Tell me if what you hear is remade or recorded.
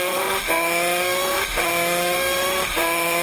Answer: remade